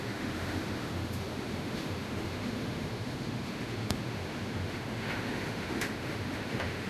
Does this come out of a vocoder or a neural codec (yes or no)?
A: yes